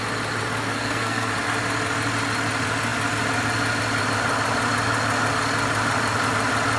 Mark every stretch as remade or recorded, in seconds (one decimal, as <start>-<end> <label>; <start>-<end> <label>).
0.0-0.6 recorded; 0.6-1.3 remade; 1.3-6.8 recorded